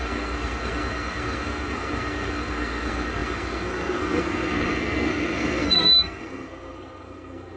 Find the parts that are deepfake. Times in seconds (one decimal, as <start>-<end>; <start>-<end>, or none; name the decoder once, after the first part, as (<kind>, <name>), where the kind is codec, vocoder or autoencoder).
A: 0.0-7.6 (codec, SNAC)